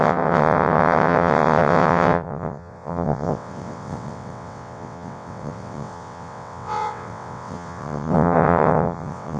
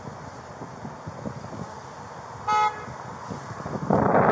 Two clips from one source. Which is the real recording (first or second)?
second